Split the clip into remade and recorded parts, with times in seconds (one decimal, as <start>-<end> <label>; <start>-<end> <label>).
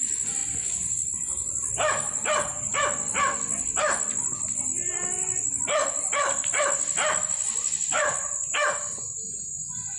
0.0-10.0 recorded